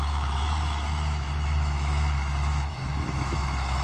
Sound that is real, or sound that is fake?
fake